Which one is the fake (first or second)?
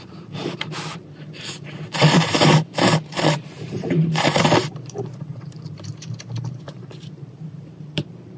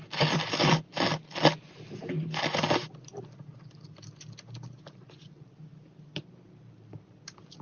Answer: first